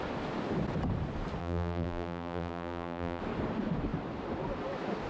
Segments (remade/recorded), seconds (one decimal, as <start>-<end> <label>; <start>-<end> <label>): 0.0-1.4 recorded; 1.4-3.2 remade; 3.2-5.1 recorded